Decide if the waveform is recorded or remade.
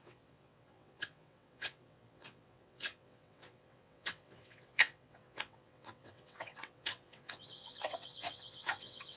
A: remade